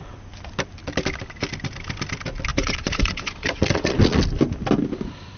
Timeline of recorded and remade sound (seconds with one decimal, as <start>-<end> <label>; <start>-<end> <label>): 0.0-2.5 recorded; 2.5-4.2 remade; 4.2-5.4 recorded

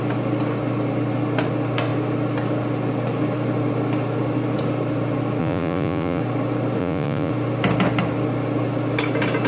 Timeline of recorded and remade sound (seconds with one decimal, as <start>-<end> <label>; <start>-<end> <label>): 0.0-5.4 recorded; 5.4-6.2 remade; 6.2-6.8 recorded; 6.8-7.3 remade; 7.3-9.5 recorded